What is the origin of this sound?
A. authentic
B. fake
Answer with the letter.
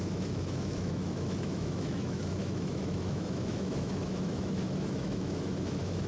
B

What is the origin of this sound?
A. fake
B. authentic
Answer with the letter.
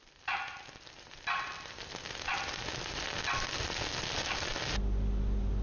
B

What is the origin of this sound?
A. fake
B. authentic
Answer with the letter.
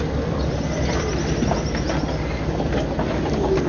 B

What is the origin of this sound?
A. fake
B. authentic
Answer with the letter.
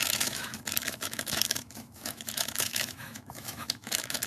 A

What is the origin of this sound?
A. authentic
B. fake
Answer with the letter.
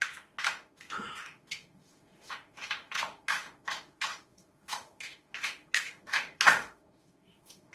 B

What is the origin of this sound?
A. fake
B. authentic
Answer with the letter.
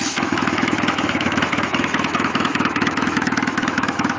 A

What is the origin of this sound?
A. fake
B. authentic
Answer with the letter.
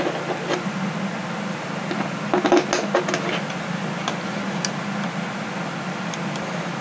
B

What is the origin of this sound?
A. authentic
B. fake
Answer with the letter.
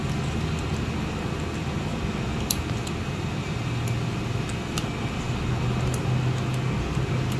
A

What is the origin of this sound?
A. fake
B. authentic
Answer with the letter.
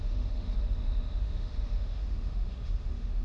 A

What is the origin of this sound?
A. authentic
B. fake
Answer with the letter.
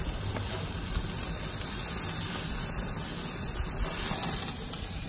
A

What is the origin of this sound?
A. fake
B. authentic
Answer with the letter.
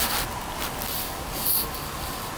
B